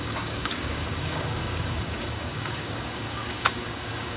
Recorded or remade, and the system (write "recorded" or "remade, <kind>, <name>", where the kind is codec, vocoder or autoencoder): remade, codec, DAC